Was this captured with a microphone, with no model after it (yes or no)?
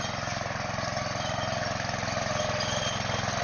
yes